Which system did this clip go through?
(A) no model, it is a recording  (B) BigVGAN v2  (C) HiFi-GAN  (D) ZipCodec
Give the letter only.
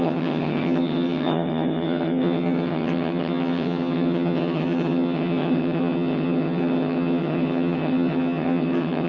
C